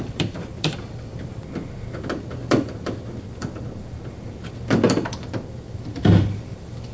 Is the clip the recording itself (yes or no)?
no